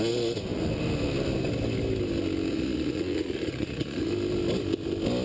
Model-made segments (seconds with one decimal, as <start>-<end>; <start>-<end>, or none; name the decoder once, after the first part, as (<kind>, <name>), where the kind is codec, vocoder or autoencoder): 2.5-4.1 (vocoder, Vocos)